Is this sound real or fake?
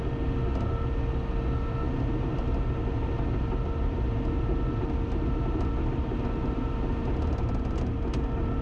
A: real